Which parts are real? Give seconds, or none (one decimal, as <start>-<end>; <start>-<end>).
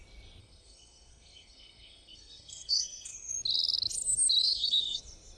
0.0-0.4; 3.3-4.4; 5.0-5.4